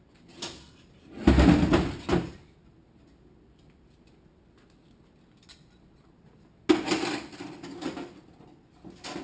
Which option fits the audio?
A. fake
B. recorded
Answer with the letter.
B